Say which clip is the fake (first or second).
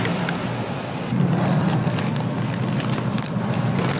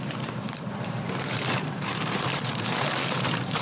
second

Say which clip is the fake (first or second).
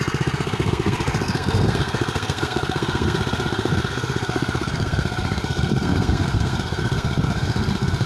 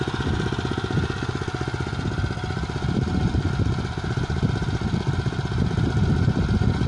first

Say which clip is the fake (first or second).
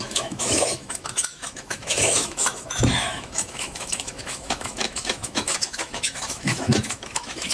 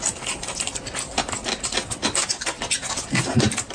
first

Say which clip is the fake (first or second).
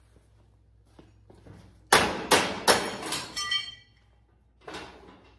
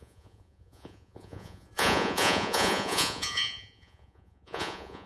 second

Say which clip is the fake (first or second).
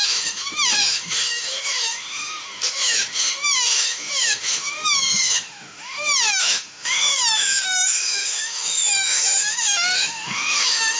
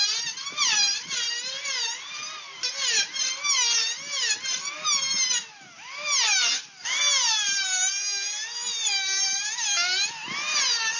first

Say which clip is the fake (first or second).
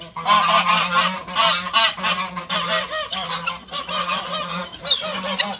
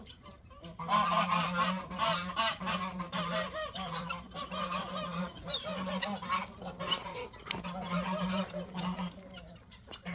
second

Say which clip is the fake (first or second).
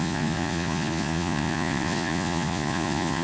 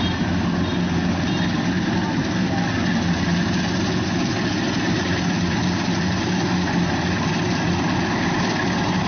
first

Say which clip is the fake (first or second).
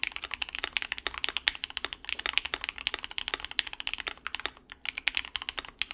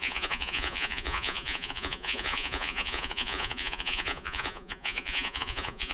second